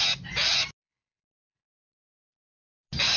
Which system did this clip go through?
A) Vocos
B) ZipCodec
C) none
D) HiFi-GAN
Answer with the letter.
C